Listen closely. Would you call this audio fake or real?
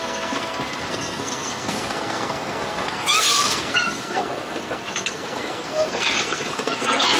fake